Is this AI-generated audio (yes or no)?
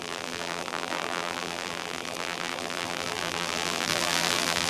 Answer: yes